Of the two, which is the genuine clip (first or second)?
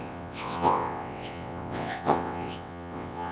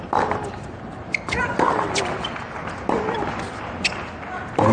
second